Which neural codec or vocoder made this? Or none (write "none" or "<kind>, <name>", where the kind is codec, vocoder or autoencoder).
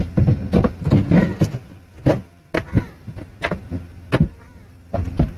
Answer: none